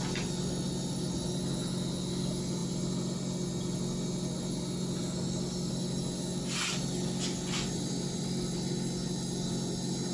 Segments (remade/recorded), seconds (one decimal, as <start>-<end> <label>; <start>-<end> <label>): 0.0-10.1 recorded

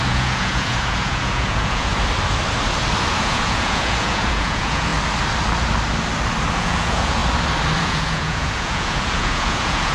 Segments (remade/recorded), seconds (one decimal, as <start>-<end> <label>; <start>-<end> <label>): 0.0-1.9 remade; 1.9-3.1 recorded; 3.1-4.9 remade; 4.9-6.5 recorded; 6.5-7.2 remade; 7.2-7.8 recorded; 7.8-9.9 remade

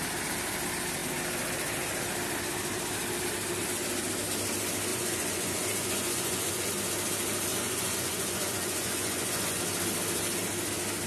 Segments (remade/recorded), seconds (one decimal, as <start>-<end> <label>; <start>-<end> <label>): 0.0-4.9 recorded; 4.9-6.7 remade; 6.7-7.5 recorded; 7.5-9.6 remade; 9.6-11.1 recorded